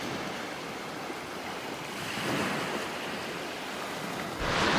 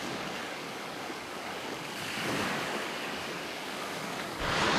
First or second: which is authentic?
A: first